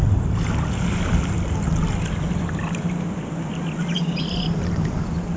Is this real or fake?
real